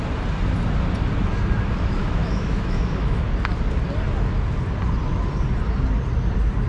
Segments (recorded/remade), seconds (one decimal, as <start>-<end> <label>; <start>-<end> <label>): 0.0-2.0 recorded; 2.0-3.2 remade; 3.2-6.7 recorded